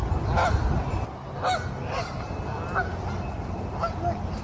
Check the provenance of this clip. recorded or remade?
recorded